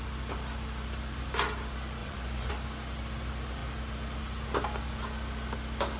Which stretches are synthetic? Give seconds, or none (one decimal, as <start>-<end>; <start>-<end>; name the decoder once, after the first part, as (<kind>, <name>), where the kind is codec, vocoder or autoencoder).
2.0-2.5 (vocoder, Vocos)